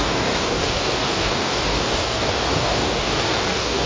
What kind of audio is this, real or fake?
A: fake